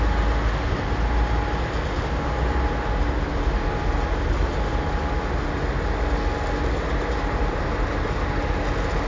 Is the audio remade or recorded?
recorded